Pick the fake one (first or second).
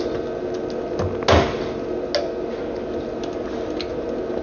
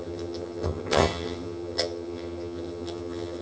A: second